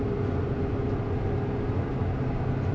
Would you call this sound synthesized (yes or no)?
no